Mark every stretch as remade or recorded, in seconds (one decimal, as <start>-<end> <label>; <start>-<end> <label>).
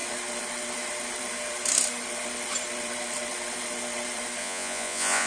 0.0-4.4 recorded; 4.4-5.3 remade